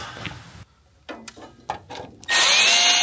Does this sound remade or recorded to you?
recorded